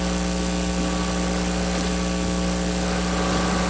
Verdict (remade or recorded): recorded